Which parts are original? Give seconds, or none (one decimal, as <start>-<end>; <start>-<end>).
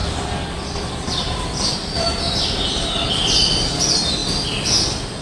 3.1-5.2